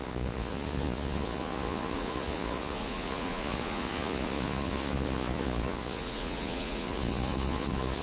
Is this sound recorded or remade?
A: remade